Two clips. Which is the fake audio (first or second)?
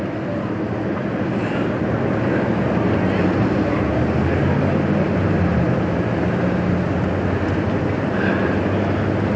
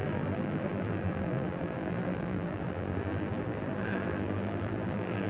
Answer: second